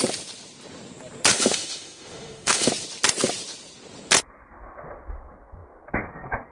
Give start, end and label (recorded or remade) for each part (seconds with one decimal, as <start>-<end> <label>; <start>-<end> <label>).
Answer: 0.0-1.3 recorded; 1.3-2.7 remade; 2.7-6.5 recorded